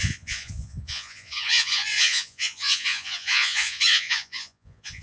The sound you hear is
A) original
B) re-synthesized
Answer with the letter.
B